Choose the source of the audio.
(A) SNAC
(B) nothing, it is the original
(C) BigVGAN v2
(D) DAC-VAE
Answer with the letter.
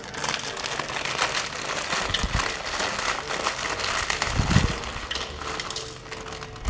B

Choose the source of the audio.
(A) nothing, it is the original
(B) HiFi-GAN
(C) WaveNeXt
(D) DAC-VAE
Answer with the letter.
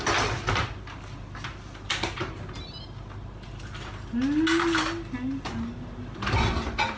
A